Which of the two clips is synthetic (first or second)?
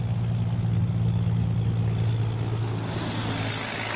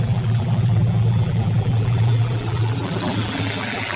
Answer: second